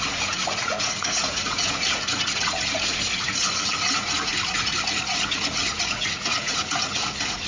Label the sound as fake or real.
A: fake